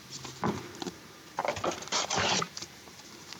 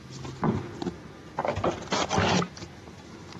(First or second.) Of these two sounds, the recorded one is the second